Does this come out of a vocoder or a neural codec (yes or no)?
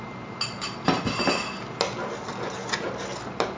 no